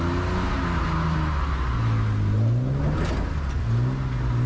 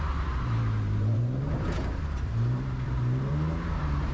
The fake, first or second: second